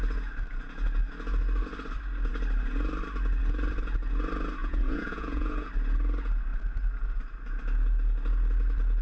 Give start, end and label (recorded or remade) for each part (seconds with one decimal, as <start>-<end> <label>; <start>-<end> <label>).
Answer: 0.0-4.6 recorded; 4.6-5.7 remade; 5.7-9.0 recorded